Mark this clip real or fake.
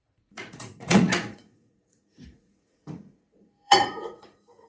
fake